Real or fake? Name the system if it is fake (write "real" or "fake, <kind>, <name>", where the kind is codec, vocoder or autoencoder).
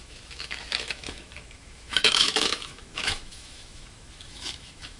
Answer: fake, autoencoder, DAC-VAE